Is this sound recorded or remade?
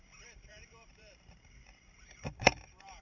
remade